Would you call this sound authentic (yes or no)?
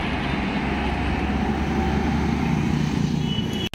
yes